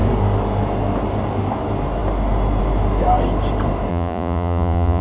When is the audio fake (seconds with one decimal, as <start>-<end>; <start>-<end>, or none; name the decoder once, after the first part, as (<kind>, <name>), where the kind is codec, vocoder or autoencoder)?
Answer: 3.9-5.0 (vocoder, Vocos)